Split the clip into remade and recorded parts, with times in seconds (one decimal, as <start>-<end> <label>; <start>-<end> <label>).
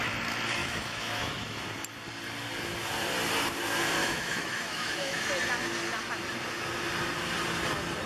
0.0-0.6 recorded; 0.6-1.6 remade; 1.6-4.0 recorded; 4.0-5.3 remade; 5.3-8.1 recorded